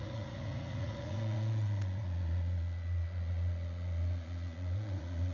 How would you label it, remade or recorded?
remade